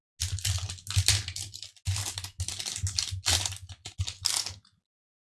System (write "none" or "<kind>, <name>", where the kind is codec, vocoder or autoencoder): none